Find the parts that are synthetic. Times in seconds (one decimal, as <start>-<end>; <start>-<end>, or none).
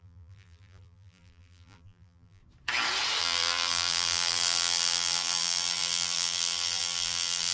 0.0-2.4; 3.2-7.5